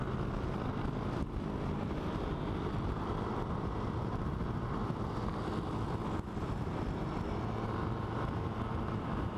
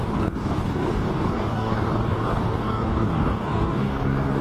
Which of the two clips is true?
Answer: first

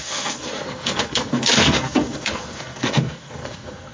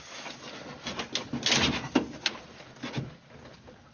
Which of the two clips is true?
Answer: second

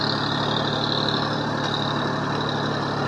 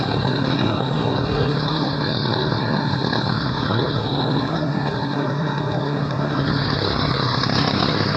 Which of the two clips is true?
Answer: first